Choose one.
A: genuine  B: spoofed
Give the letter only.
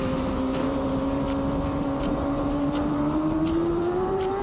B